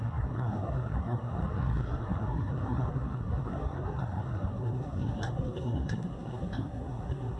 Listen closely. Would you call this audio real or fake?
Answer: fake